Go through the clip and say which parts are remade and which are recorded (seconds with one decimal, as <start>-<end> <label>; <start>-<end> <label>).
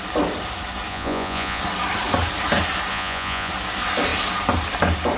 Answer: 0.0-0.9 recorded; 0.9-1.6 remade; 1.6-2.9 recorded; 2.9-3.5 remade; 3.5-5.2 recorded